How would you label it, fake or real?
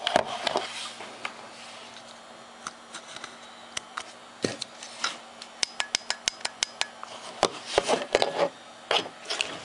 real